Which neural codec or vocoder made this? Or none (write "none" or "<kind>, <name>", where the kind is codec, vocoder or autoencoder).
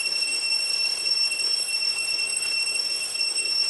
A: autoencoder, DAC-VAE